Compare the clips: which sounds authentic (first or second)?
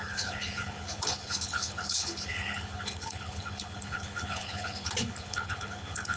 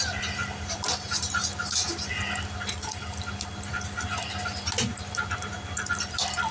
second